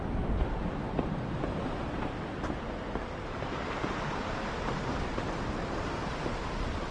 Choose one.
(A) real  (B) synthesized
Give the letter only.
A